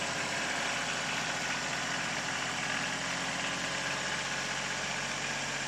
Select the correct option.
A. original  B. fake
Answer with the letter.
A